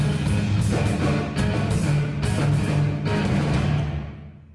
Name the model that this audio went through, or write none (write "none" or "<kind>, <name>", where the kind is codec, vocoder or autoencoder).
none